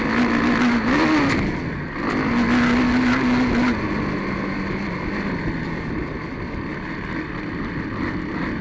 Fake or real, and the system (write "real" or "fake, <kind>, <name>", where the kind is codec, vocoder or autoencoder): real